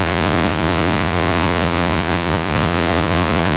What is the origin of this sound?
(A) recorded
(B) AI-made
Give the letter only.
B